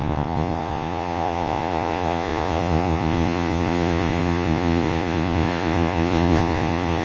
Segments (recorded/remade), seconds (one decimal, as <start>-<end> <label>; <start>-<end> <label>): 0.0-7.0 remade